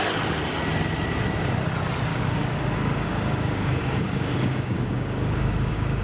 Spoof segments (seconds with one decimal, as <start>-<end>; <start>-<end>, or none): 2.1-6.0